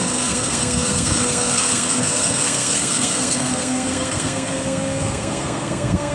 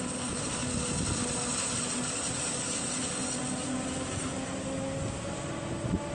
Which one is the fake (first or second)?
first